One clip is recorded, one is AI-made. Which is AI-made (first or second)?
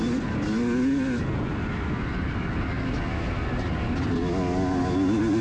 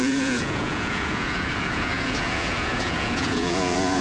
second